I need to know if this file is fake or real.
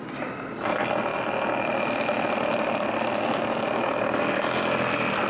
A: real